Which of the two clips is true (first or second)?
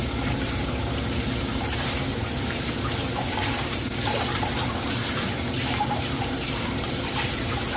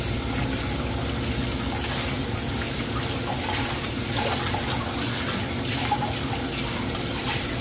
second